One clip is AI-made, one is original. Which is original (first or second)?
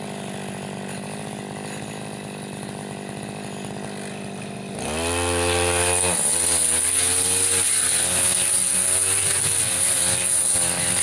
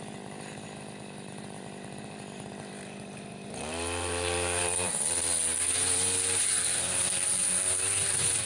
first